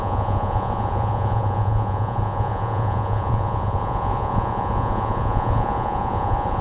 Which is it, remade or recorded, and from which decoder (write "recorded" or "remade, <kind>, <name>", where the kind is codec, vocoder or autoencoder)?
remade, vocoder, Vocos